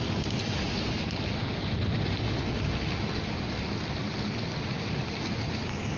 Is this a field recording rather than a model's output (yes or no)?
yes